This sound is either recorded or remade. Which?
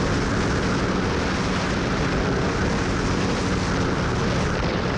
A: recorded